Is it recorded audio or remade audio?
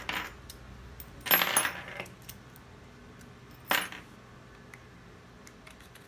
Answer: recorded